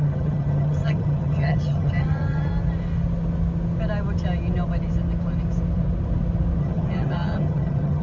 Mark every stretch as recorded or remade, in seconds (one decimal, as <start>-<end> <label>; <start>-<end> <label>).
0.0-2.5 remade; 2.5-6.6 recorded; 6.6-8.0 remade